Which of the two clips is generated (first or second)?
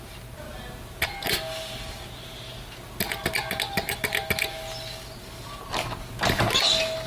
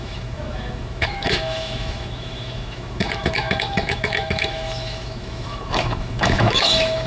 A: second